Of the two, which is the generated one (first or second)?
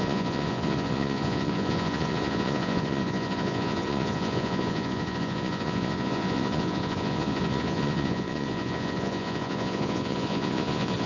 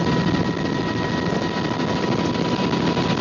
first